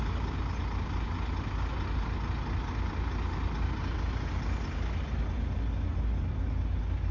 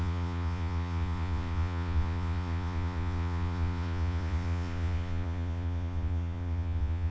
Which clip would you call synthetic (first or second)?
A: second